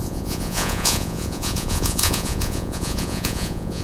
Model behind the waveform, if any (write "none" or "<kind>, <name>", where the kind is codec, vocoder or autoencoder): vocoder, Vocos